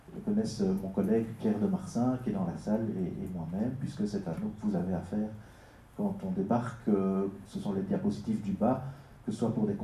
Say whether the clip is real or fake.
real